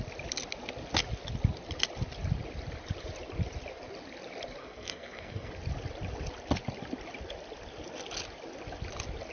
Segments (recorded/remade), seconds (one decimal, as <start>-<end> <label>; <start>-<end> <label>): 0.0-4.6 recorded; 4.6-5.5 remade; 5.5-9.3 recorded